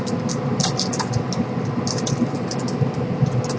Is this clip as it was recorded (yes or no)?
yes